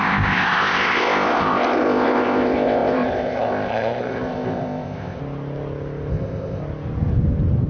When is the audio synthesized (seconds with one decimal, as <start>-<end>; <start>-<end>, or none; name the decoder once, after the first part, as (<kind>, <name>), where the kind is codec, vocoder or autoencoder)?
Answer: 0.0-5.2 (codec, ZipCodec); 6.1-6.6